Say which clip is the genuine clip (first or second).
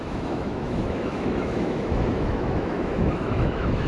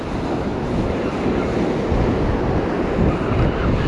second